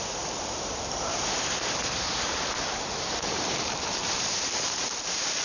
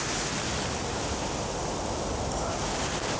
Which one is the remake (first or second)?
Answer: first